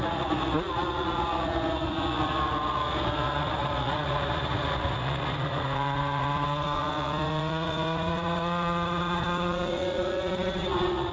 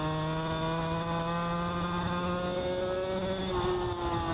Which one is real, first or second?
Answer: second